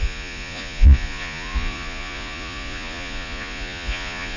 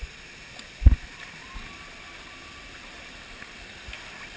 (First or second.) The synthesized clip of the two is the first